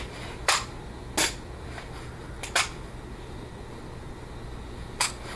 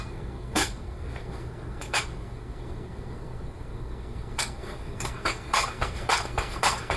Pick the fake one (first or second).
second